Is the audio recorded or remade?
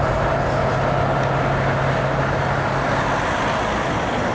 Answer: recorded